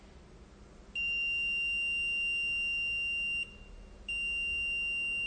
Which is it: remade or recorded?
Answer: recorded